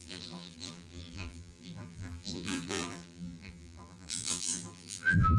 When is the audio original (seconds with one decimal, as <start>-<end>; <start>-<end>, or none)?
none